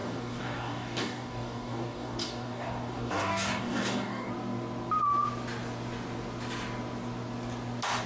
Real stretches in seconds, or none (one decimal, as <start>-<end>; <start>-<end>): 4.3-8.1